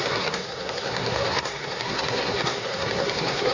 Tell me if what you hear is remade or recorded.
remade